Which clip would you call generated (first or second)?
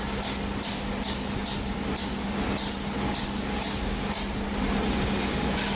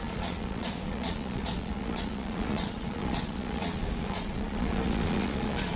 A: second